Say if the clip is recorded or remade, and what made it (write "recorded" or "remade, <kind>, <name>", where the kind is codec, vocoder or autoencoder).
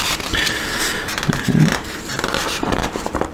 remade, vocoder, BigVGAN v2